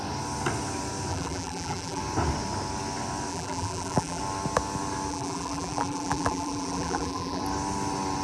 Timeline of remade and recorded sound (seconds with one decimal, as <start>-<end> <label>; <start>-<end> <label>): 0.0-1.1 recorded; 1.1-2.0 remade; 2.0-3.3 recorded; 3.3-4.2 remade; 4.2-5.1 recorded; 5.1-7.4 remade; 7.4-8.2 recorded